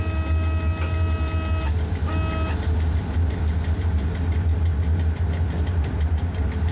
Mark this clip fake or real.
real